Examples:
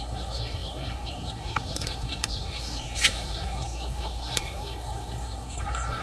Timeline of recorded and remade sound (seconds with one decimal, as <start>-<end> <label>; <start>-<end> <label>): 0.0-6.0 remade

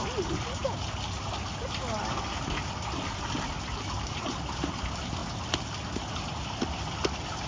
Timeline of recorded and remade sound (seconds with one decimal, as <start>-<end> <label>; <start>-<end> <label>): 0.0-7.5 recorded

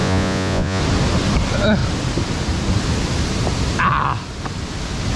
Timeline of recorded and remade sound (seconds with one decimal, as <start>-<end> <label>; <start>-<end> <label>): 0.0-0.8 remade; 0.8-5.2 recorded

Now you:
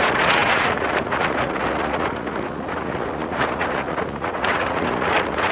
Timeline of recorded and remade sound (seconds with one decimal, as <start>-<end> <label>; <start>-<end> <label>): 0.0-5.5 remade

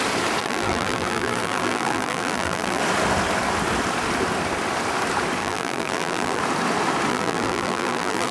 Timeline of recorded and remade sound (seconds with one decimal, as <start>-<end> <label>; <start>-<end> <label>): 0.0-0.4 recorded; 0.4-2.8 remade; 2.8-5.4 recorded; 5.4-6.4 remade; 6.4-7.1 recorded; 7.1-8.3 remade

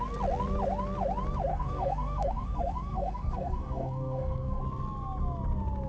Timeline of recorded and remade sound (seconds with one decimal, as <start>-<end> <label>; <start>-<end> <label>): 0.0-1.5 recorded; 1.5-4.6 remade; 4.6-5.9 recorded